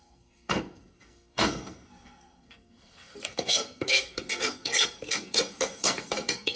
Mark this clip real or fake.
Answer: fake